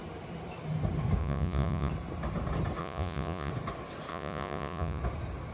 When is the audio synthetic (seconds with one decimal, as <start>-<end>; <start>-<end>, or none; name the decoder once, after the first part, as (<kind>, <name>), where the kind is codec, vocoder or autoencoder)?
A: 1.2-1.9 (vocoder, Vocos); 2.8-3.5; 4.1-5.0